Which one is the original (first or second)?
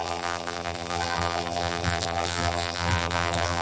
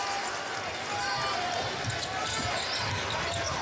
second